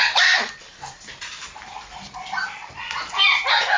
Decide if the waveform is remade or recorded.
recorded